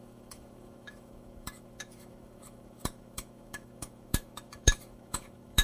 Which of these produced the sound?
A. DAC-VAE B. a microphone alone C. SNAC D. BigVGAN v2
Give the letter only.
A